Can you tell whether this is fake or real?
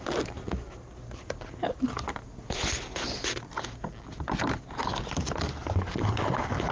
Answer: real